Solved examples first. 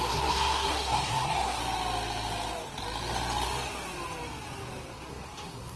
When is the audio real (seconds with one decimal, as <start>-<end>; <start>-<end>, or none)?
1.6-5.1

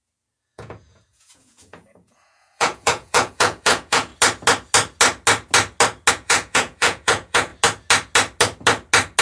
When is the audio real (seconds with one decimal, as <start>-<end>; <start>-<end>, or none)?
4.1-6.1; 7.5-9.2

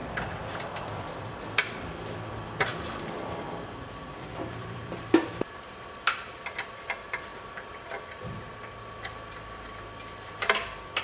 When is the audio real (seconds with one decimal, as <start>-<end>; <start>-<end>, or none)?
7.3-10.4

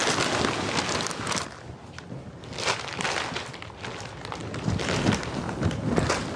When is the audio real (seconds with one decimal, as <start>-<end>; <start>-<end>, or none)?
0.0-6.4

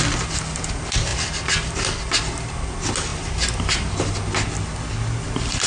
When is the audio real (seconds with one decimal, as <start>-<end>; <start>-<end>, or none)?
0.0-5.7